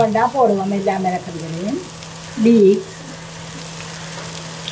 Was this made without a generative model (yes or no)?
yes